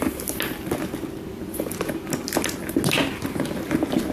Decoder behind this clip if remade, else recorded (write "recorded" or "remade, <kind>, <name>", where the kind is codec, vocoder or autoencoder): recorded